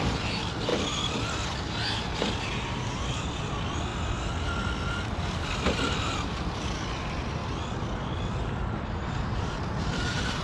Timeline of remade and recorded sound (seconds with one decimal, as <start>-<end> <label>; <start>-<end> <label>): 0.0-3.9 remade; 3.9-5.2 recorded; 5.2-10.4 remade